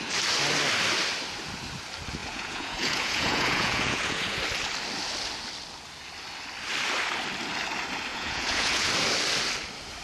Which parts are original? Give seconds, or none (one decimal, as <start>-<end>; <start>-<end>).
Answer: 0.0-2.2; 4.4-8.1; 8.9-10.0